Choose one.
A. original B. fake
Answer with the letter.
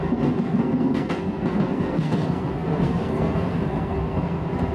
B